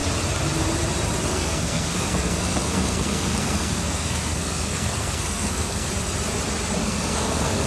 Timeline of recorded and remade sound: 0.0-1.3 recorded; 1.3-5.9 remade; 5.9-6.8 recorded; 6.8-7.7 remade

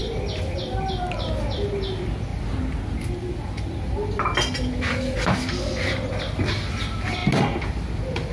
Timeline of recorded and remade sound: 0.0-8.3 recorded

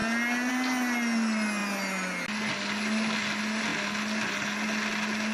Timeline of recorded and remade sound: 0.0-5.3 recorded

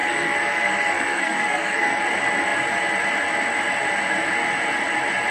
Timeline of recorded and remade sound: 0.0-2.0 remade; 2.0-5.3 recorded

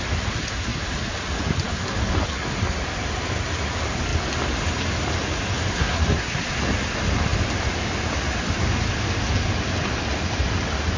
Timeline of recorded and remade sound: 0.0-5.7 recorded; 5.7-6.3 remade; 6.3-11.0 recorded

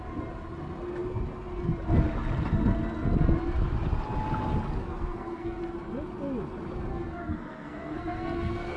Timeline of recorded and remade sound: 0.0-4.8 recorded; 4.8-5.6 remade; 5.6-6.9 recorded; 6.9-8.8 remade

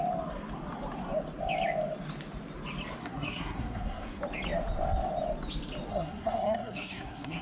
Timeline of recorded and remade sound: 0.0-3.0 recorded; 3.0-4.2 remade; 4.2-5.9 recorded; 5.9-7.4 remade

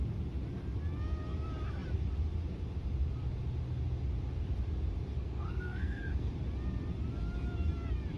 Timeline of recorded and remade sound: 0.0-5.1 recorded; 5.1-6.3 remade; 6.3-8.2 recorded